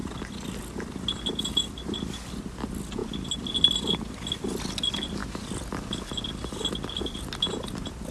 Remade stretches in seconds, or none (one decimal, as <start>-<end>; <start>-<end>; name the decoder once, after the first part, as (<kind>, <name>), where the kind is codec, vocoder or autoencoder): none

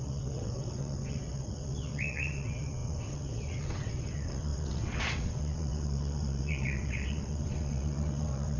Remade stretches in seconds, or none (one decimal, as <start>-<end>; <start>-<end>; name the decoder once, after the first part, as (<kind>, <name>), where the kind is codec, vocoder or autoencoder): 0.0-8.6 (vocoder, WaveNeXt)

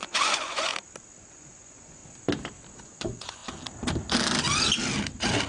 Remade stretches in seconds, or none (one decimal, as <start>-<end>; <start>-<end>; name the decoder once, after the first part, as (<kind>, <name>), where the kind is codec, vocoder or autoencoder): 0.0-0.7 (vocoder, Vocos); 1.3-2.0; 2.8-3.4

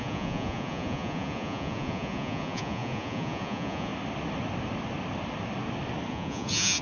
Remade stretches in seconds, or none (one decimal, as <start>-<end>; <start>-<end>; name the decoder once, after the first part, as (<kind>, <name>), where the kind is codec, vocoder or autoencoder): 0.0-3.9 (vocoder, Vocos); 6.1-6.8

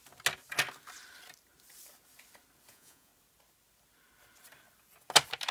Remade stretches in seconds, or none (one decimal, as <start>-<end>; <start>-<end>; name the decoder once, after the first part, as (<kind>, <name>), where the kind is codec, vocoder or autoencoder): 2.7-3.1 (vocoder, Vocos)

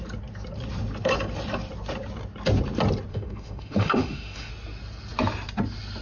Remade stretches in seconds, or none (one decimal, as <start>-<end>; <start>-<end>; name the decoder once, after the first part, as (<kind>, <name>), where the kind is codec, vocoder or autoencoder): 3.1-4.5 (autoencoder, DAC-VAE)

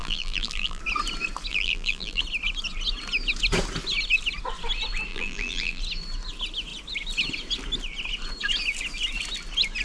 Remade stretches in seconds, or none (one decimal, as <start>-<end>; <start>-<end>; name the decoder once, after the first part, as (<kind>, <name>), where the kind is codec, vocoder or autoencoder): 0.0-0.8 (vocoder, BigVGAN v2); 1.5-2.2; 5.1-5.8